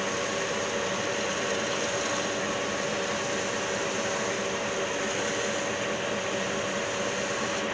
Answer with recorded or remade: recorded